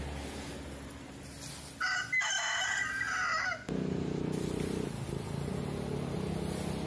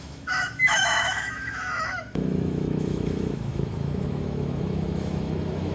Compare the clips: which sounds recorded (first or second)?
first